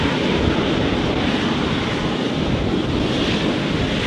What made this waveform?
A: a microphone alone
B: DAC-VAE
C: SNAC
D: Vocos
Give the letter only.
A